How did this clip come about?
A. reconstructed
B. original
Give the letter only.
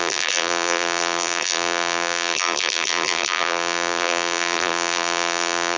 A